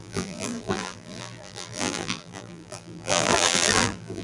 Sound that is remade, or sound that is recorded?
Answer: remade